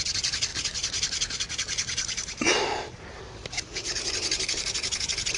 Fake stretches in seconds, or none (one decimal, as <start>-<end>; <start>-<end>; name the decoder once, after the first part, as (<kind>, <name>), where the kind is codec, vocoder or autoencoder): 0.5-3.2 (vocoder, BigVGAN v2)